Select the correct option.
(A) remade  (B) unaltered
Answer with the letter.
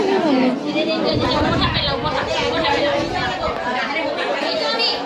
B